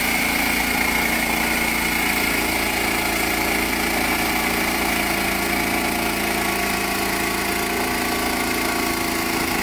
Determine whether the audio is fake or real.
real